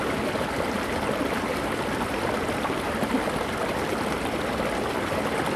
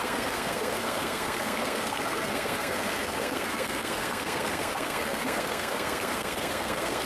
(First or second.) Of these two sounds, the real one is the first